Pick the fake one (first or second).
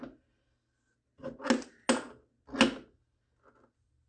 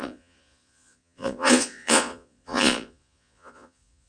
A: second